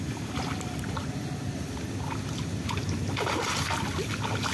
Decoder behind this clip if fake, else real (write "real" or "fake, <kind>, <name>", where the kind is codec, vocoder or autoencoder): real